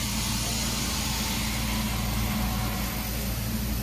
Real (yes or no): yes